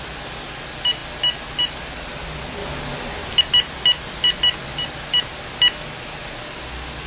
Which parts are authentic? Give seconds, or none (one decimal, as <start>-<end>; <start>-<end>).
0.0-7.1

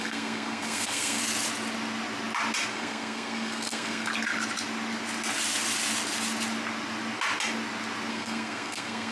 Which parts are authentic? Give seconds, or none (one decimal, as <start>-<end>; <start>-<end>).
1.2-2.7; 4.1-8.1

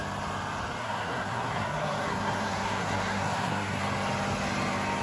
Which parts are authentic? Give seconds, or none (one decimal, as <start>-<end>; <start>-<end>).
0.0-0.8; 3.8-5.0